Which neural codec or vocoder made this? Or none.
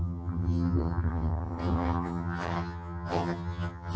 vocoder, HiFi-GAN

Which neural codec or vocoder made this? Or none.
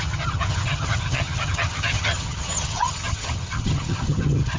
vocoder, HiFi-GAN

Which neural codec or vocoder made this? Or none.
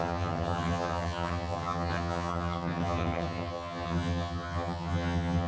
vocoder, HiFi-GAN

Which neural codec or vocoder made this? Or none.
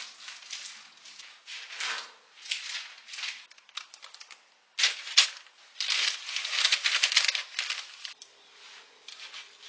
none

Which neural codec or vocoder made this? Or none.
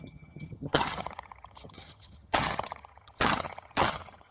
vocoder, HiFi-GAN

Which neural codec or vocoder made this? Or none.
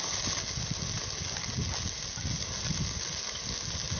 none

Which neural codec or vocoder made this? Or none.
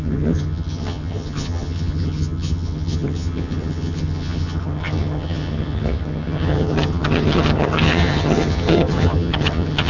vocoder, HiFi-GAN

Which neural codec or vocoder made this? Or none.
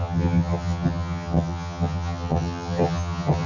vocoder, HiFi-GAN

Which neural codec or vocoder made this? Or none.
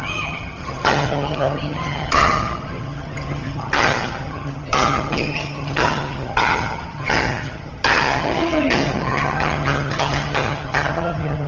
vocoder, HiFi-GAN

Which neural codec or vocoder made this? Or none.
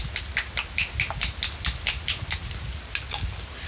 none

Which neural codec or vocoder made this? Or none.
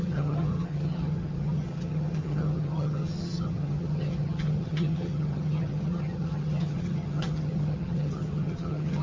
vocoder, HiFi-GAN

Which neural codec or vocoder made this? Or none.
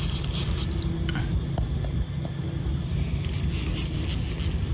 none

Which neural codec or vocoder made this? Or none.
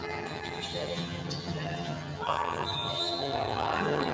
vocoder, HiFi-GAN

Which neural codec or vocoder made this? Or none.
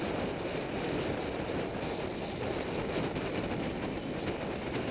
none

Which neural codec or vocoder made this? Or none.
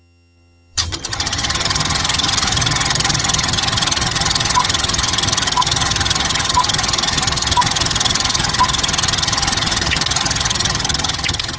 vocoder, HiFi-GAN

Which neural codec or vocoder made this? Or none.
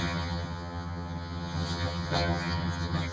vocoder, HiFi-GAN